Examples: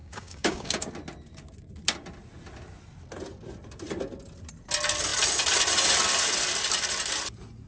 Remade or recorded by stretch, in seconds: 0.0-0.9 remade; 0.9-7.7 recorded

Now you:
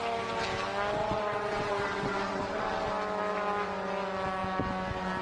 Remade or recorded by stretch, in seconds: 0.0-1.0 recorded; 1.0-2.9 remade; 2.9-5.2 recorded

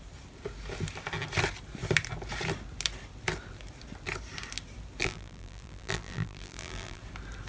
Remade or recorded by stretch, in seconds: 0.0-5.0 recorded; 5.0-7.0 remade; 7.0-7.5 recorded